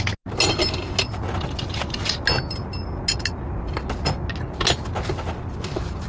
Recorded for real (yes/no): yes